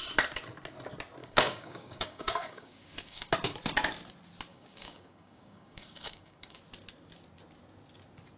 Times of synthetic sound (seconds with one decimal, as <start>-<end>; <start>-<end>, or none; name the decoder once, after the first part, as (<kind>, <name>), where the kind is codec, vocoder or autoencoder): 1.2-3.3 (codec, DAC); 4.5-6.6